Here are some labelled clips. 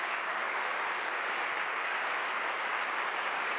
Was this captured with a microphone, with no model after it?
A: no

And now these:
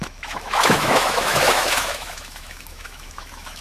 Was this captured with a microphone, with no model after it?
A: no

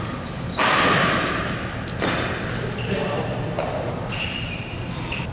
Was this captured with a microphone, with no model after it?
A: no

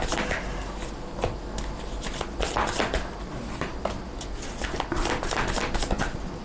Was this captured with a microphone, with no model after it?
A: yes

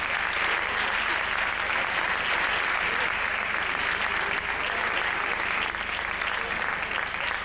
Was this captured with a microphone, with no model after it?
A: yes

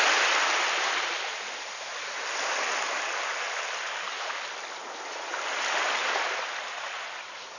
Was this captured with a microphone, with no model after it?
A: yes